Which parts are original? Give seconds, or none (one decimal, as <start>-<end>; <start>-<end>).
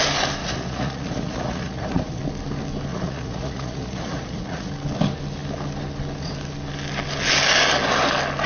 0.0-0.4; 2.2-2.9; 4.7-8.5